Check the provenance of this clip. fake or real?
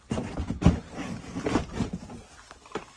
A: fake